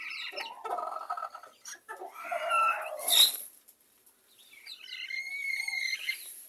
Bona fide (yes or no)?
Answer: no